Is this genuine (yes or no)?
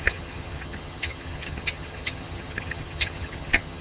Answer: no